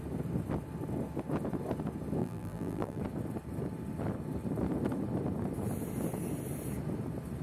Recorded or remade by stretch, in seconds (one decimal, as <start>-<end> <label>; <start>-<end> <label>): 0.0-2.2 recorded; 2.2-3.0 remade; 3.0-7.4 recorded